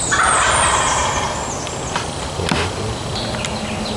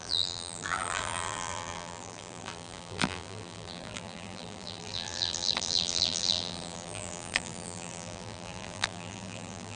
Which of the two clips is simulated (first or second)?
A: second